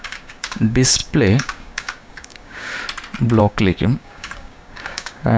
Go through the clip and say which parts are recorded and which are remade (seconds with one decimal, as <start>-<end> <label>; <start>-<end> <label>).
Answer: 0.0-2.7 remade; 2.7-3.4 recorded; 3.4-5.4 remade